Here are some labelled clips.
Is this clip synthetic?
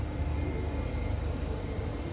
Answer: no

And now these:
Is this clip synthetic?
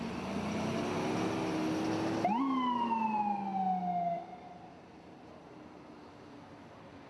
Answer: no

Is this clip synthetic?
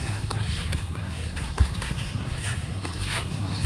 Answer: yes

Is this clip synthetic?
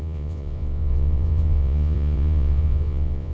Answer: yes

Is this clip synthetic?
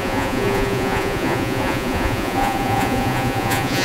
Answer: yes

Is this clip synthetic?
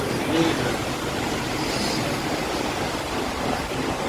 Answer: no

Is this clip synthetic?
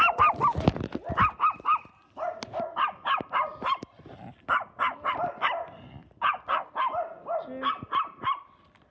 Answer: no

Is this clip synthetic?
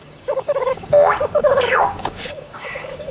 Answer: yes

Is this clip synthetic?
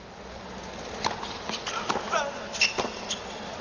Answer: no